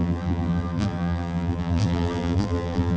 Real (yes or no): no